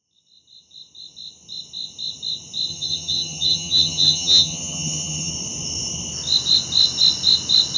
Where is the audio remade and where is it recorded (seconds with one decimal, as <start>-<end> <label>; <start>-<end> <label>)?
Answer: 0.0-2.7 recorded; 2.7-5.3 remade; 5.3-7.8 recorded